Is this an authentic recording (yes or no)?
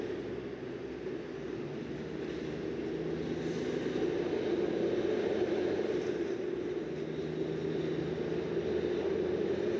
yes